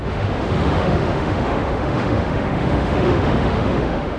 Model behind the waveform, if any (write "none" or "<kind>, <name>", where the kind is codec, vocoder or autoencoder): autoencoder, DAC-VAE